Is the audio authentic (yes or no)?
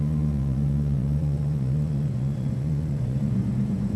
no